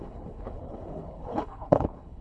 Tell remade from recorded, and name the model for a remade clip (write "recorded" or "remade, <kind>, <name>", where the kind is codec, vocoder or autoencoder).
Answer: remade, codec, HILCodec